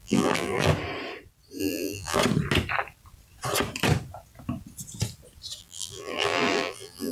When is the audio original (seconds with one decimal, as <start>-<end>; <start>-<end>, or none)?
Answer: 0.7-1.6; 2.2-5.6